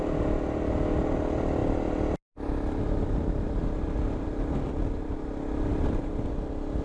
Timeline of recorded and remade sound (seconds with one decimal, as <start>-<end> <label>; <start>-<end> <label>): 0.0-6.8 recorded